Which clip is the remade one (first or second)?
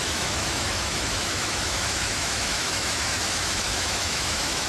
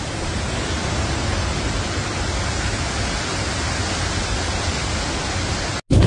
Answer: first